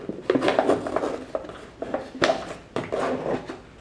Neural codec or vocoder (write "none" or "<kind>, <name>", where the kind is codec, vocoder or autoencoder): none